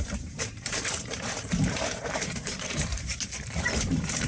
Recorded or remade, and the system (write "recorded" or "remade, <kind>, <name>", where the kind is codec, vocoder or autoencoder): remade, vocoder, BigVGAN v2